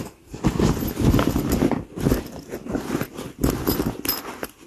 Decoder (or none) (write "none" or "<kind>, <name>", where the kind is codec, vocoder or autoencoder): none